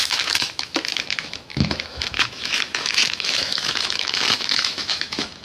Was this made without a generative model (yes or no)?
no